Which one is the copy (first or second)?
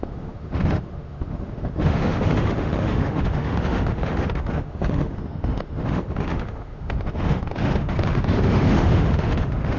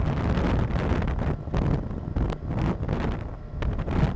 first